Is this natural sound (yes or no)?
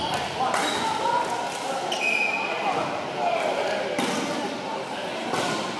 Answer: yes